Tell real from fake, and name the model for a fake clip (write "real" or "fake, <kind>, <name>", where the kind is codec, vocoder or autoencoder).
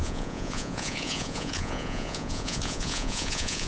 fake, vocoder, Vocos